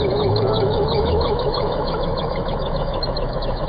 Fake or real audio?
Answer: fake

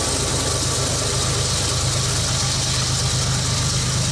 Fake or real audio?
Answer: real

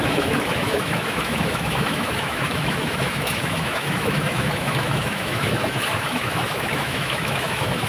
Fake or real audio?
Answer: fake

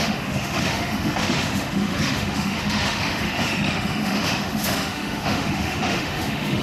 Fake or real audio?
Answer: fake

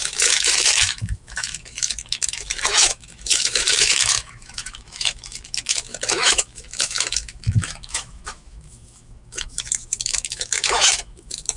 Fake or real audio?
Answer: fake